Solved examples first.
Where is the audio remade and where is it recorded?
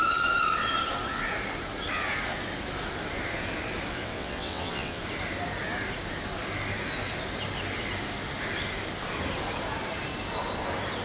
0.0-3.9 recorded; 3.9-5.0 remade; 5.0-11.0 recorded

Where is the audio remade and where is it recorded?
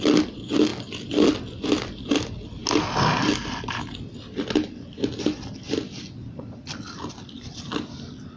0.0-8.4 recorded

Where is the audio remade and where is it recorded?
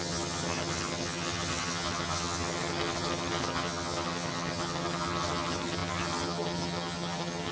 0.0-7.5 remade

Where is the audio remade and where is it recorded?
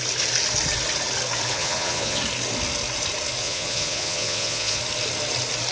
0.0-1.5 recorded; 1.5-2.2 remade; 2.2-3.4 recorded; 3.4-4.8 remade; 4.8-5.7 recorded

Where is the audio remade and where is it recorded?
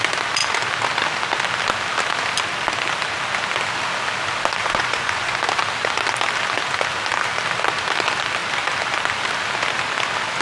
0.0-4.6 recorded; 4.6-5.4 remade; 5.4-10.4 recorded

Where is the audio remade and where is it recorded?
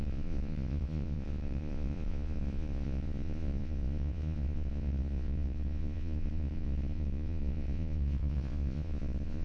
0.0-9.4 remade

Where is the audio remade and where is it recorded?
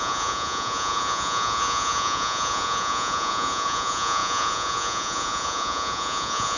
0.0-6.6 remade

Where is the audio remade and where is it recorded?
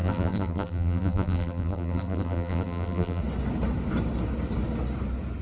0.0-3.2 remade; 3.2-5.4 recorded